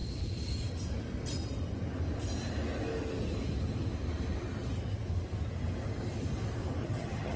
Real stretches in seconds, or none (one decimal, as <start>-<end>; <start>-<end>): 0.0-6.8